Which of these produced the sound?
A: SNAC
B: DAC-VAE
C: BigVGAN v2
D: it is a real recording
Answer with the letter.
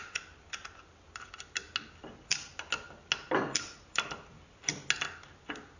D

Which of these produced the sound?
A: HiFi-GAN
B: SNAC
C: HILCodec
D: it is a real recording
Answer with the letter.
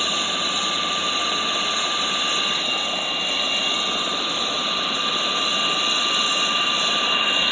D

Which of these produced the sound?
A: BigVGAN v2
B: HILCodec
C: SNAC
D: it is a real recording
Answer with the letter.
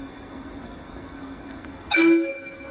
C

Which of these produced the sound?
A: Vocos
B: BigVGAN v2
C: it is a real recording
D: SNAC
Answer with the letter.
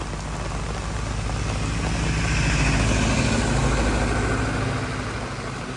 C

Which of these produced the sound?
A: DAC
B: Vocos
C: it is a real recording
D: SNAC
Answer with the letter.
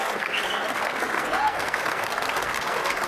D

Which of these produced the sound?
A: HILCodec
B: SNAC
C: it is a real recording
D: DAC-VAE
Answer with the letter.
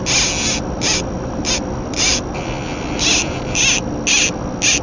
C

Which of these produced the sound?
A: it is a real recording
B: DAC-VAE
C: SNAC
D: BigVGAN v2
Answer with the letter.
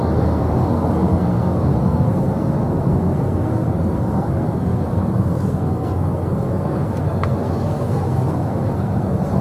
C